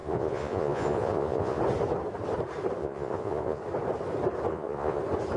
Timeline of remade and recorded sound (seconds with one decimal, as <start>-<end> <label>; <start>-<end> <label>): 0.0-1.6 remade; 1.6-2.8 recorded; 2.8-3.6 remade; 3.6-4.5 recorded; 4.5-5.0 remade; 5.0-5.4 recorded